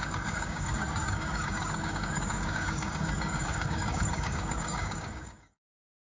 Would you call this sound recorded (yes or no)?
no